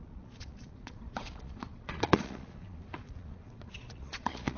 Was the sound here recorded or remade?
remade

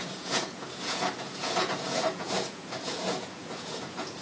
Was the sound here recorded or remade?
remade